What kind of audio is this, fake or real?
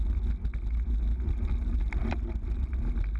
real